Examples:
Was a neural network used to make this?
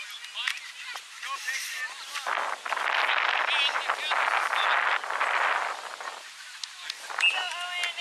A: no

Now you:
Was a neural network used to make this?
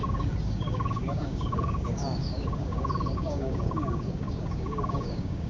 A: yes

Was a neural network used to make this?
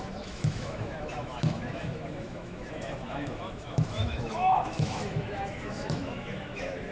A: yes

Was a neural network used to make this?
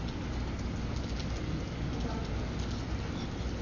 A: no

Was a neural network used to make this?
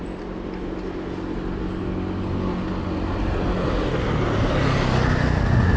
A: no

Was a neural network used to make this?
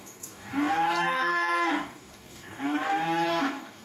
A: yes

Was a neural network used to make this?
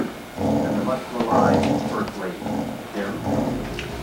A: no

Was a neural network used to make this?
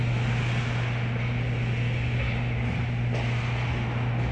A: no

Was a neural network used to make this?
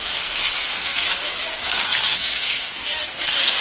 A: yes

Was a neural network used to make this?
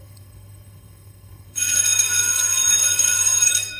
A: yes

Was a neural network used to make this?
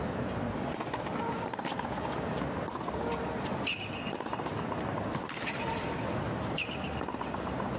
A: no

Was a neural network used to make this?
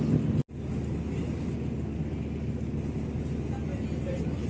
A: no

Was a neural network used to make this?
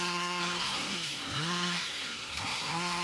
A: yes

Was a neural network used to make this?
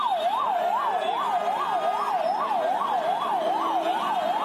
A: no